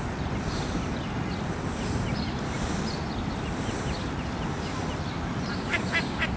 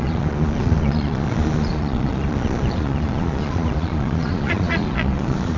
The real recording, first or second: first